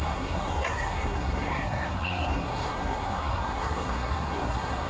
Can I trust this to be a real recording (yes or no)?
no